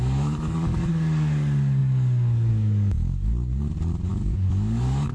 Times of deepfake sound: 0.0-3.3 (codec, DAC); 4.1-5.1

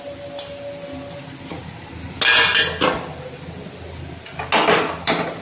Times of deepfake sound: none